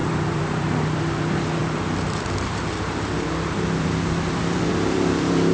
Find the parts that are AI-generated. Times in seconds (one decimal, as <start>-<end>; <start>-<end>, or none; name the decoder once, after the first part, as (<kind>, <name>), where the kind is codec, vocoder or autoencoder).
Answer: 0.0-5.5 (vocoder, BigVGAN v2)